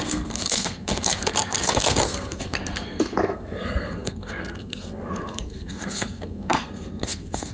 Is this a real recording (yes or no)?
no